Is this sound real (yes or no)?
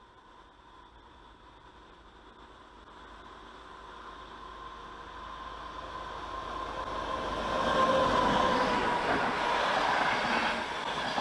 yes